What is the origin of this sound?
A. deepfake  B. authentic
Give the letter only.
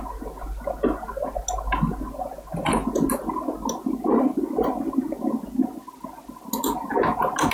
B